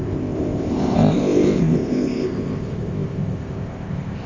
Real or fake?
fake